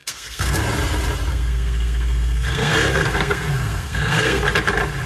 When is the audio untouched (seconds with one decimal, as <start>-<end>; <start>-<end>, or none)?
0.6-1.3; 4.4-5.1